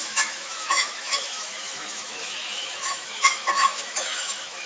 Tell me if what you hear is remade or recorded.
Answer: remade